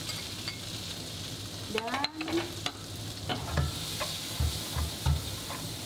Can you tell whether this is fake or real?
real